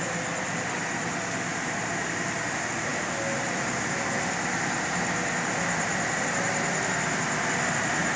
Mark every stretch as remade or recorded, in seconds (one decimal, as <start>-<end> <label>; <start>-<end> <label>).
0.0-8.2 recorded